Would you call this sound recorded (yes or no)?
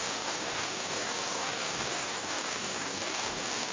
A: no